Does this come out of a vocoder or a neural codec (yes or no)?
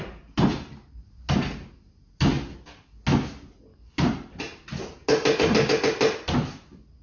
no